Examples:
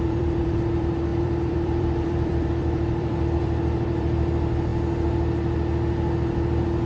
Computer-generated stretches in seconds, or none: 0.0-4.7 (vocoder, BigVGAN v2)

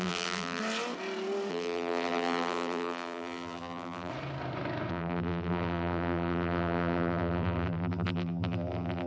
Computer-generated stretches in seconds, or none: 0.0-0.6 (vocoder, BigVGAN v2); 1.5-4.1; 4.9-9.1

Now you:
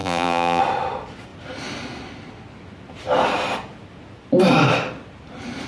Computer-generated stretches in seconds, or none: 0.0-0.6 (vocoder, BigVGAN v2)

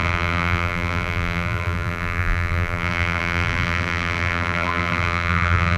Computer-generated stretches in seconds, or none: 0.0-5.8 (vocoder, BigVGAN v2)

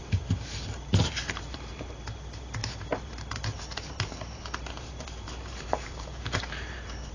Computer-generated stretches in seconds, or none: 0.0-7.1 (vocoder, BigVGAN v2)

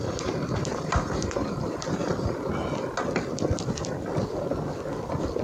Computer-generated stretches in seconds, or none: 0.0-2.0 (vocoder, BigVGAN v2)